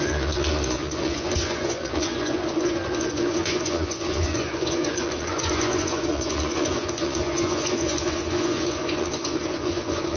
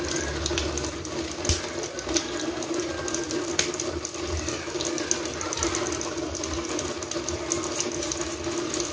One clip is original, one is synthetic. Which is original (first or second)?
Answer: second